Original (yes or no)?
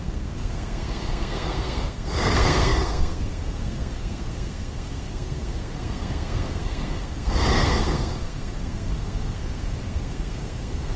no